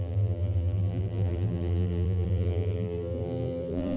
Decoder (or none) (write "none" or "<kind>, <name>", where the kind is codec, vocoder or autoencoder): vocoder, BigVGAN v2